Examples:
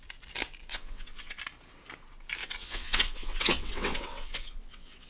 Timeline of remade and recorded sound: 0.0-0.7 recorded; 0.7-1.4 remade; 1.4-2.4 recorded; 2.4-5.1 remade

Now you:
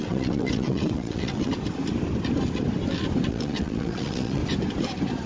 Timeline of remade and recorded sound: 0.0-1.5 remade; 1.5-3.3 recorded; 3.3-4.4 remade; 4.4-5.3 recorded

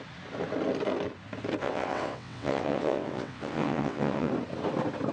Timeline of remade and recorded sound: 0.0-1.6 recorded; 1.6-4.3 remade; 4.3-5.1 recorded

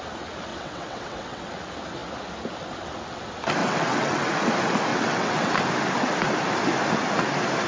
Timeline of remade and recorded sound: 0.0-0.5 recorded; 0.5-1.5 remade; 1.5-3.6 recorded; 3.6-4.3 remade; 4.3-4.9 recorded; 4.9-5.5 remade; 5.5-7.7 recorded